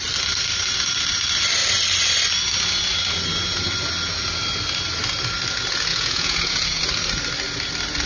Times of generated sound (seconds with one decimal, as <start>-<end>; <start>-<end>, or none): 5.9-6.8

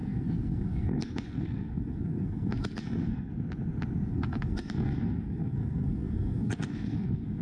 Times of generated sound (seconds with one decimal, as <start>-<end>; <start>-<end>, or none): 0.0-3.3; 4.1-7.4

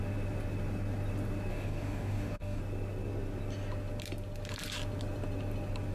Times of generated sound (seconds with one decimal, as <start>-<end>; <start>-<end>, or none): 1.5-2.6

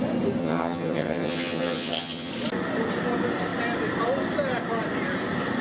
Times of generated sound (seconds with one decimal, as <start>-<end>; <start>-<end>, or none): 0.4-2.3